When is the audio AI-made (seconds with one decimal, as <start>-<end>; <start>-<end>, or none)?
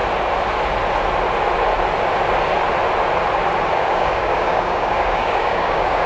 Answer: 3.7-6.1